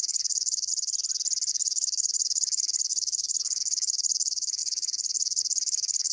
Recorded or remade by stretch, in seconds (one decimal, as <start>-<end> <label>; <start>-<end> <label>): 0.0-0.7 remade; 0.7-1.5 recorded; 1.5-6.1 remade